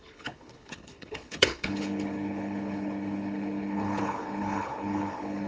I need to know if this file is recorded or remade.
remade